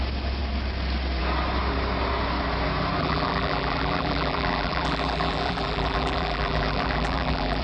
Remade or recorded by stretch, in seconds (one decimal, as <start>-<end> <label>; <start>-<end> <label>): 0.0-3.0 recorded; 3.0-7.6 remade

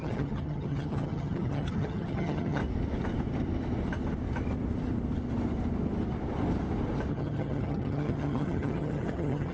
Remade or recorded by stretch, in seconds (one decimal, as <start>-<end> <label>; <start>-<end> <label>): 0.0-2.6 remade; 2.6-7.1 recorded; 7.1-9.5 remade